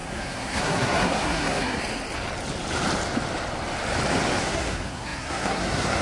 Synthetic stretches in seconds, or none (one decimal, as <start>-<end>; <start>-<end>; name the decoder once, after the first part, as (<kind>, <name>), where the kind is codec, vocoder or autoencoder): 0.0-1.8 (codec, SNAC); 4.4-6.0